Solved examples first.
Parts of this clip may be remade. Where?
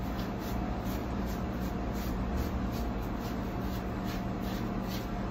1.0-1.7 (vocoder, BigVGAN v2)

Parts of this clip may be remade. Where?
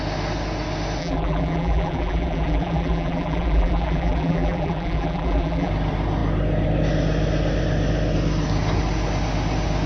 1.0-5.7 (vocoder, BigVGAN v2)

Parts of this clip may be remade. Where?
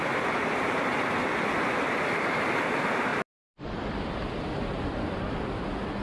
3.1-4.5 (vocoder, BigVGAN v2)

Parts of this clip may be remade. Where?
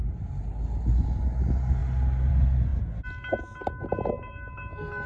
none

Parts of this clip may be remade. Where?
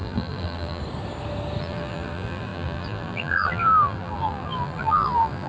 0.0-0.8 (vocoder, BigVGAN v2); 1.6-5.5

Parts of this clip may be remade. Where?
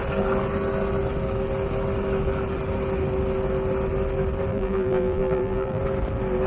4.5-5.8 (vocoder, BigVGAN v2)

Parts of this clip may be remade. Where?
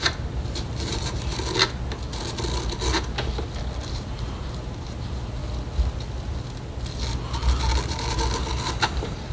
0.0-1.3 (vocoder, BigVGAN v2); 3.9-5.4; 8.9-9.3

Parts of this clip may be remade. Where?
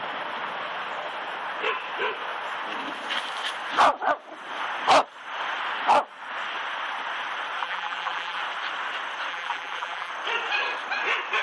7.6-8.4 (vocoder, BigVGAN v2); 9.3-10.1